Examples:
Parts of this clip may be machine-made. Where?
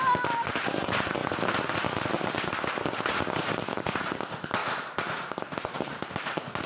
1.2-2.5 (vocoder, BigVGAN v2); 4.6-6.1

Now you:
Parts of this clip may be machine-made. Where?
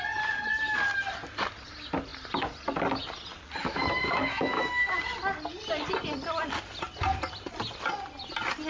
3.6-5.0 (autoencoder, DAC-VAE)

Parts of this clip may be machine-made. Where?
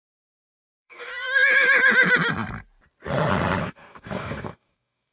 0.0-1.1 (codec, DAC); 3.6-5.1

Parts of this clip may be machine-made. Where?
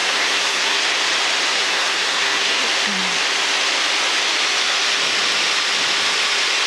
0.0-0.8 (codec, SNAC); 1.5-2.6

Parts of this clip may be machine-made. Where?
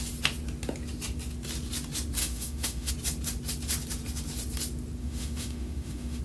2.2-2.9 (autoencoder, DAC-VAE); 5.0-6.2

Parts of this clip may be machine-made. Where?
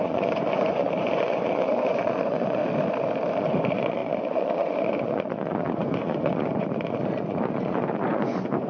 0.0-2.6 (vocoder, Vocos); 3.4-8.7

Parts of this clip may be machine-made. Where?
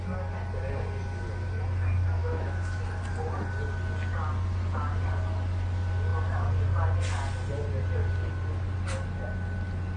2.2-2.8 (autoencoder, DAC-VAE)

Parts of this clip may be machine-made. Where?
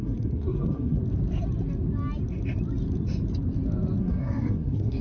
0.0-1.0 (codec, SNAC); 4.0-5.0